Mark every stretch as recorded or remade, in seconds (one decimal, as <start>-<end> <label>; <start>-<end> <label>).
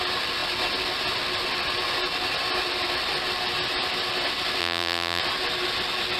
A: 0.0-4.6 recorded; 4.6-5.2 remade; 5.2-6.2 recorded